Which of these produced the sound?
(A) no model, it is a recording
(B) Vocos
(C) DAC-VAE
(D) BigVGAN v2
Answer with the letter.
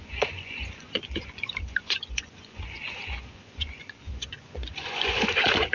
B